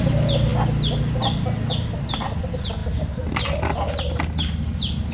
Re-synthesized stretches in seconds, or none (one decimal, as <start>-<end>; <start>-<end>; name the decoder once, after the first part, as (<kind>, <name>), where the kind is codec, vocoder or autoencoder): none